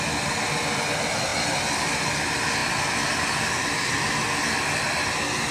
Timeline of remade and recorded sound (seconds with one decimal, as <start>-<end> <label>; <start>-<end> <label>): 0.0-2.6 recorded; 2.6-4.1 remade; 4.1-5.5 recorded